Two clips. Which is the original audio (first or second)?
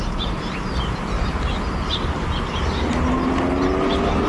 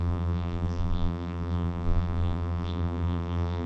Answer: first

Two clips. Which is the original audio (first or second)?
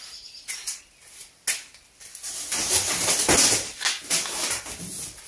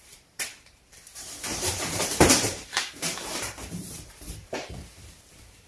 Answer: first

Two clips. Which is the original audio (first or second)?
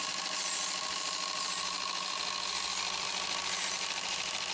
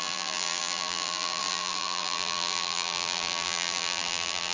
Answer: first